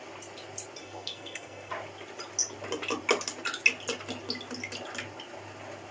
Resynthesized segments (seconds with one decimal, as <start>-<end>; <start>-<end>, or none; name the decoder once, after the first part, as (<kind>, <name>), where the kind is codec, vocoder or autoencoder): 0.8-1.7 (codec, SNAC)